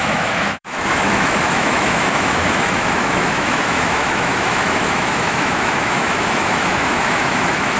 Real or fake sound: fake